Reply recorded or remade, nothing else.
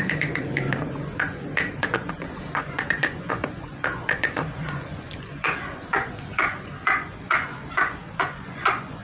remade